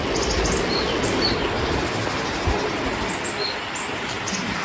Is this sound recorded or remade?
recorded